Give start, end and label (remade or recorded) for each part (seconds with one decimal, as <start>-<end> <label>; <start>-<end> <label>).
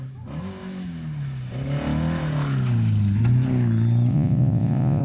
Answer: 0.0-4.1 recorded; 4.1-5.0 remade